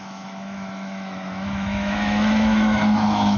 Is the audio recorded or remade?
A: remade